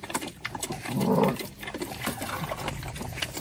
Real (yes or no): yes